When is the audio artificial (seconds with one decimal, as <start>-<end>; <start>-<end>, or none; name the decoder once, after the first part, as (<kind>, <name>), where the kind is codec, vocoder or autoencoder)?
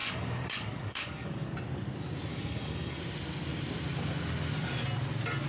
0.0-1.5 (codec, DAC); 2.3-3.0